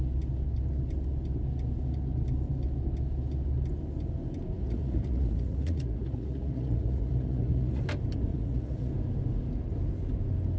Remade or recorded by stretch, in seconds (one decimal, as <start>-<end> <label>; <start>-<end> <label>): 0.0-4.6 recorded; 4.6-7.8 remade; 7.8-8.3 recorded; 8.3-8.9 remade; 8.9-10.6 recorded